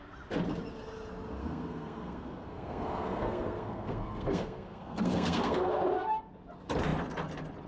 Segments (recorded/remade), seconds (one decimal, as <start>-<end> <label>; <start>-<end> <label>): 0.0-1.4 recorded; 1.4-5.7 remade; 5.7-7.7 recorded